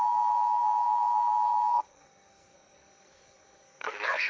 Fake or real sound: fake